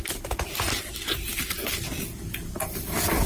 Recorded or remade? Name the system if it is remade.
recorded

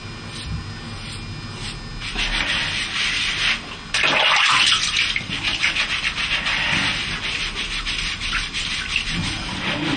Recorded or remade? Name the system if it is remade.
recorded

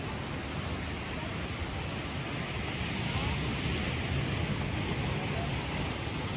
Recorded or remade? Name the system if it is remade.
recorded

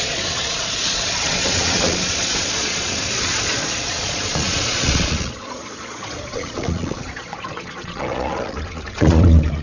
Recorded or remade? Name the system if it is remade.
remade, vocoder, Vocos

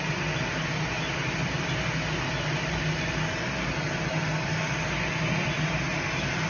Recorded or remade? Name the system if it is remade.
recorded